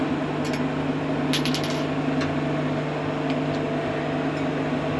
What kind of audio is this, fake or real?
real